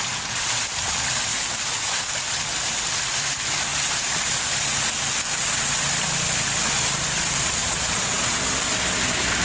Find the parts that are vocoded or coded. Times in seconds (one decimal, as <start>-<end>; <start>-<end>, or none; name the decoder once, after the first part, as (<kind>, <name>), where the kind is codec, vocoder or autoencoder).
7.6-8.4 (vocoder, Vocos)